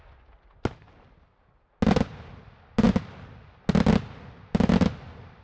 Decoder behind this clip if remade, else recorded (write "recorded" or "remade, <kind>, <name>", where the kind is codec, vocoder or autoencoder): recorded